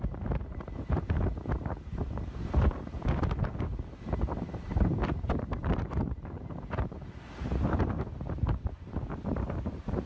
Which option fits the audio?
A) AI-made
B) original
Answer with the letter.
A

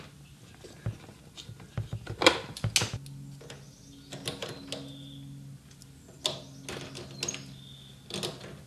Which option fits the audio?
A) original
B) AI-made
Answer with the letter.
A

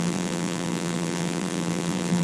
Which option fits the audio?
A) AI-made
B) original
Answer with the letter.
A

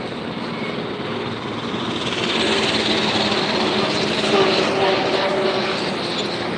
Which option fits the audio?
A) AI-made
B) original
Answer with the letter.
B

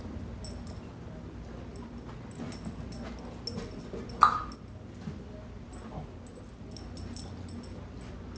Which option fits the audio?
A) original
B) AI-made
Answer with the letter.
A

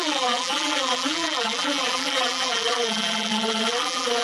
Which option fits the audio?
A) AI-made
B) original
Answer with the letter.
A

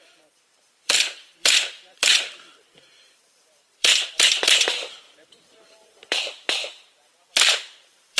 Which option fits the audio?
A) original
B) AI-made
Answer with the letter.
B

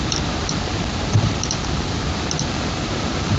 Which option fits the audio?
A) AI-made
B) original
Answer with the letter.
A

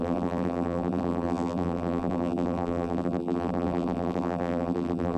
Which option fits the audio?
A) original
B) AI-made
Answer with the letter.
B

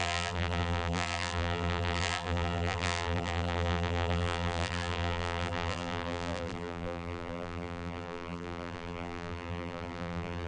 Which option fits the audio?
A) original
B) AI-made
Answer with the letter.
B